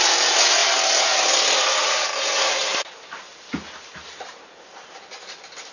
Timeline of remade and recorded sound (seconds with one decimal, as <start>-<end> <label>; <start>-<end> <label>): 0.0-5.7 recorded